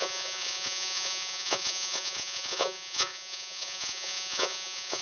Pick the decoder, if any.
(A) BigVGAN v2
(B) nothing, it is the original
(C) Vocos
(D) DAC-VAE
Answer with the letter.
C